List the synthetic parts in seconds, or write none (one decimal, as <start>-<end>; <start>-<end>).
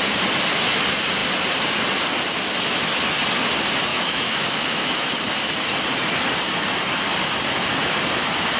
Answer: 3.9-5.1